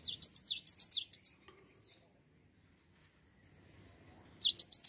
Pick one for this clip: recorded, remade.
recorded